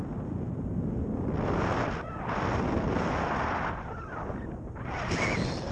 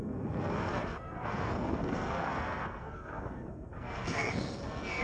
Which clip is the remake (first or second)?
second